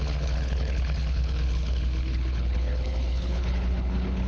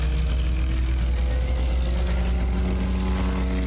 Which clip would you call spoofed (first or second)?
first